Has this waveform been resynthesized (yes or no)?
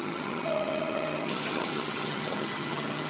yes